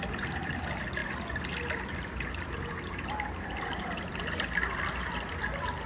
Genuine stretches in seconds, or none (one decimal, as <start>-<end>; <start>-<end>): 0.0-5.9